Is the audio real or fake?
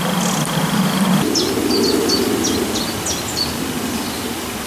real